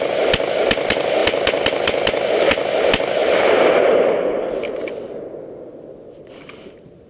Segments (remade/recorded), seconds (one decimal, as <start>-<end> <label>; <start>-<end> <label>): 0.0-7.1 recorded